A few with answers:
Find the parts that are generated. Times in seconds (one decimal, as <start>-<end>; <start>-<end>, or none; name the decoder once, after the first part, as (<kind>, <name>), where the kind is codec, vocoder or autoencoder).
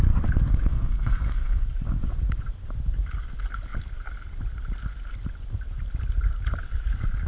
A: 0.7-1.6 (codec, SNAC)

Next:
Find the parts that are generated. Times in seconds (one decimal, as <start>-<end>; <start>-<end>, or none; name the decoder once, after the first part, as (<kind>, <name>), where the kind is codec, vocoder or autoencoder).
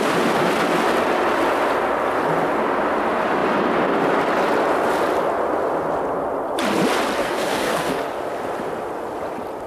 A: 7.2-8.0 (codec, SNAC)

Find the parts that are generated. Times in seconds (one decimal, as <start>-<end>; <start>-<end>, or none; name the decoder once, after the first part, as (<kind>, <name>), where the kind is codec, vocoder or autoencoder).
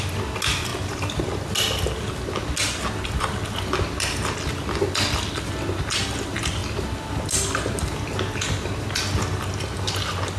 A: none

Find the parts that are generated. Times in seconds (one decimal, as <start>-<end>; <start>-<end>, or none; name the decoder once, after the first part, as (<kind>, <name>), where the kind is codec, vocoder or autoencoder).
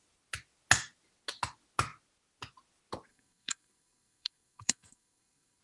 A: 3.1-5.6 (codec, SNAC)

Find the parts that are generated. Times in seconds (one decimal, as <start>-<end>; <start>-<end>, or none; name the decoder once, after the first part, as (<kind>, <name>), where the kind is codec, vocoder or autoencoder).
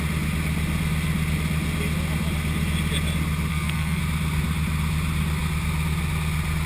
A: 3.5-4.0 (codec, SNAC)